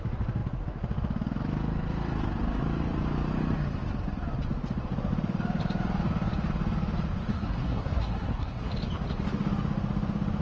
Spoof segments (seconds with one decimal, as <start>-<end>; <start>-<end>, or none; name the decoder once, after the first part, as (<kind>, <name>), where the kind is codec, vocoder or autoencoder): 7.3-8.7 (codec, SNAC)